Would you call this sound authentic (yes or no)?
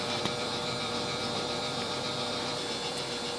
no